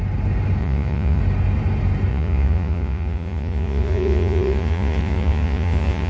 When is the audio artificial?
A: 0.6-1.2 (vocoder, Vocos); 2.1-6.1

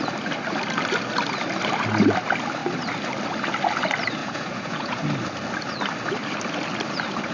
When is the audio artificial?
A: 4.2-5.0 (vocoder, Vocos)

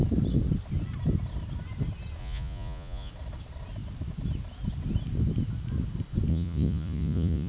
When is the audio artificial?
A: 2.2-3.1 (vocoder, Vocos); 6.3-7.5

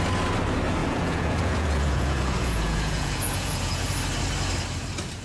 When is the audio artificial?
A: 0.8-3.9 (vocoder, Vocos)

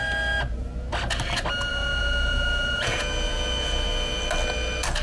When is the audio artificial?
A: 1.7-4.2 (vocoder, Vocos)

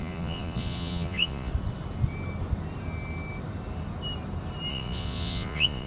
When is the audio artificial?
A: 0.0-1.5 (vocoder, Vocos); 4.7-5.9

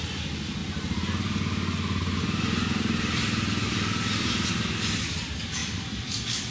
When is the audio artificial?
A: none

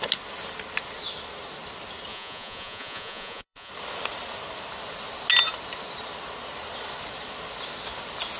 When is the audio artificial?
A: 2.1-3.7 (vocoder, Vocos)